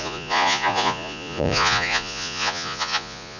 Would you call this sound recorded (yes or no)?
no